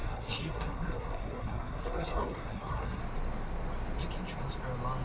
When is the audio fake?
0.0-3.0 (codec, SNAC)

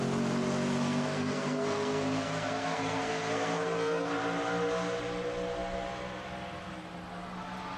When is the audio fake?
0.7-4.1 (codec, SNAC)

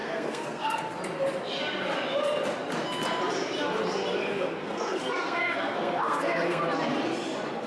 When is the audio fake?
0.0-1.0 (codec, SNAC); 4.2-6.6

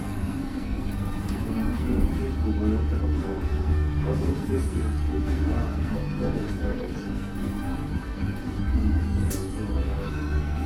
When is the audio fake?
0.0-2.1 (codec, SNAC); 3.0-10.7

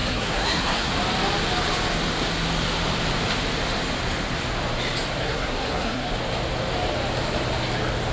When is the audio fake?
0.0-0.9 (codec, SNAC); 5.2-6.1

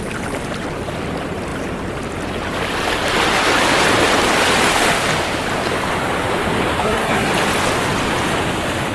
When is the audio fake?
6.8-7.3 (codec, SNAC)

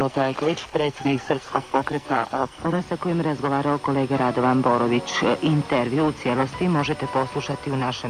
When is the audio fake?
0.0-2.8 (codec, SNAC)